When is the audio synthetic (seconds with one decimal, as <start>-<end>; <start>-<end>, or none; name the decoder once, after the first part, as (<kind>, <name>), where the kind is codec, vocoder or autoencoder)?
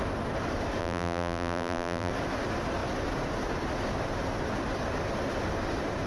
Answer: 0.8-2.1 (vocoder, BigVGAN v2)